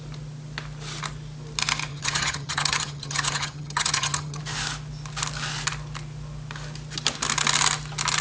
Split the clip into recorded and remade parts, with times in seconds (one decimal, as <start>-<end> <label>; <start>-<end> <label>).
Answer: 0.0-1.9 recorded; 1.9-4.4 remade; 4.4-8.2 recorded